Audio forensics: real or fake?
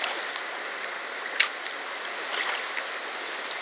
real